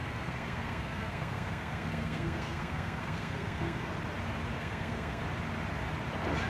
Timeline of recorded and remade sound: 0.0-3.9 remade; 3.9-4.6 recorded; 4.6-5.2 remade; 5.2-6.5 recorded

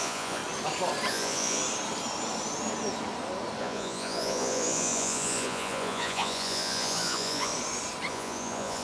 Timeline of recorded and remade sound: 0.0-0.4 remade; 0.4-1.1 recorded; 1.1-1.6 remade; 1.6-3.6 recorded; 3.6-7.5 remade; 7.5-8.1 recorded; 8.1-8.8 remade